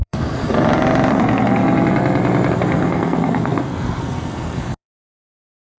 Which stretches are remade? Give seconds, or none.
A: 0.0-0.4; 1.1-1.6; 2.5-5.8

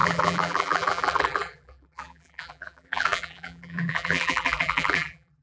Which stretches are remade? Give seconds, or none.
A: 0.0-5.4

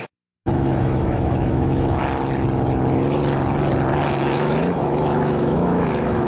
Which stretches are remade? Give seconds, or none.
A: 0.0-2.0; 4.1-6.3

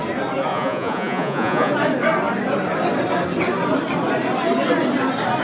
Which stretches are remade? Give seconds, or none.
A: 0.5-1.7